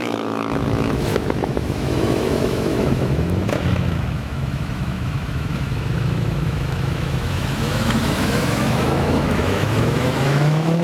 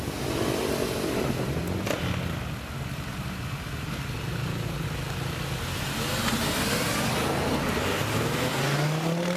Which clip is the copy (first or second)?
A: first